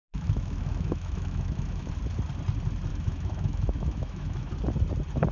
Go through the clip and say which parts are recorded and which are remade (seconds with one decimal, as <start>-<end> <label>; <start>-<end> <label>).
0.0-1.9 remade; 1.9-2.9 recorded; 2.9-4.5 remade; 4.5-5.3 recorded